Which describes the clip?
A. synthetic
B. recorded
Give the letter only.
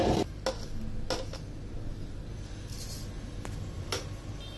B